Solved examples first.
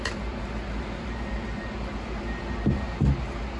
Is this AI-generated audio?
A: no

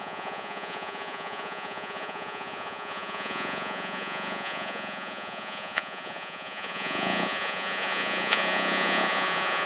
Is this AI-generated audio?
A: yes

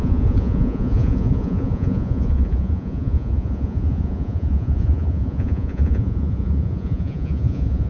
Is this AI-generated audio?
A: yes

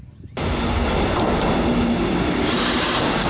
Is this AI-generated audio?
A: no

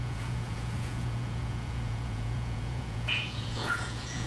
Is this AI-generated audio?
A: yes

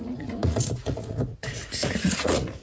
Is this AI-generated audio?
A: yes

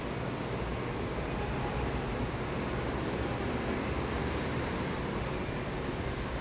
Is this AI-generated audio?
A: no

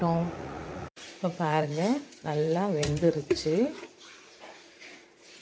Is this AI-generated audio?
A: yes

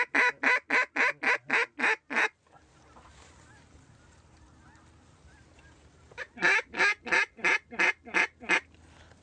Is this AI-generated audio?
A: no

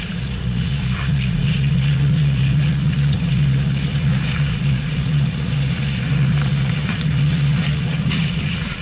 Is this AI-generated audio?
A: yes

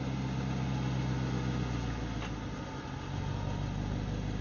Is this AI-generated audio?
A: no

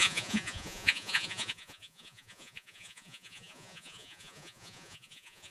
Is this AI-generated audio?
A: yes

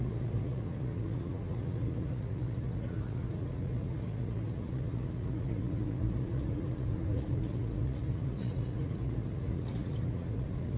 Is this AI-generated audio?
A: yes